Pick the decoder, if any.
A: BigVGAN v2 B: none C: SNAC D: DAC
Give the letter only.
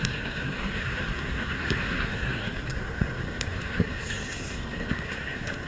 C